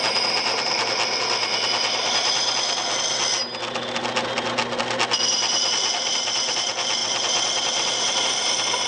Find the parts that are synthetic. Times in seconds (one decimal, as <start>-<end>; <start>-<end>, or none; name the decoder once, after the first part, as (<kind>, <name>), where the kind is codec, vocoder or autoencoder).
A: none